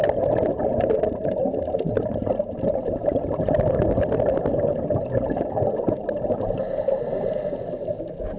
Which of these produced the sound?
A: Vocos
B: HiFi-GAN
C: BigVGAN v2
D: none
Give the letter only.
D